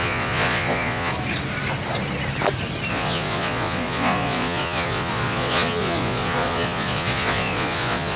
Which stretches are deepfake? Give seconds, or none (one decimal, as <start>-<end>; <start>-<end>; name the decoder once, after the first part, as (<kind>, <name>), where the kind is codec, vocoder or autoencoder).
0.0-1.1 (vocoder, Vocos); 2.9-8.2

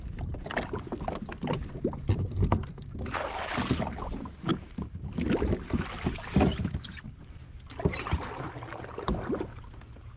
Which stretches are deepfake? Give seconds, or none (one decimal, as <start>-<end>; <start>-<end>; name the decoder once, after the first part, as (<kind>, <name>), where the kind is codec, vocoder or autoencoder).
4.5-5.2 (vocoder, BigVGAN v2)

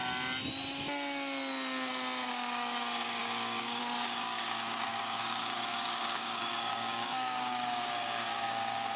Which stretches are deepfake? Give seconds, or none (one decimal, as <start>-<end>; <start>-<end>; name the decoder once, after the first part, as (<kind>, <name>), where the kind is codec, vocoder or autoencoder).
2.3-9.0 (codec, DAC)

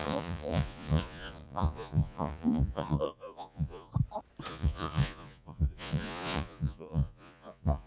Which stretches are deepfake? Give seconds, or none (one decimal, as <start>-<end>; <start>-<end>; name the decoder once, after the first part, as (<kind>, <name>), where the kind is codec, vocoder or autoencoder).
0.0-3.9 (vocoder, Vocos); 4.5-7.9

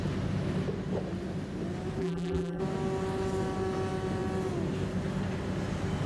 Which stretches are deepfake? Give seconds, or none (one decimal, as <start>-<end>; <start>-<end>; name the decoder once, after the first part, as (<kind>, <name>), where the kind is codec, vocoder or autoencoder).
2.0-2.6 (vocoder, BigVGAN v2)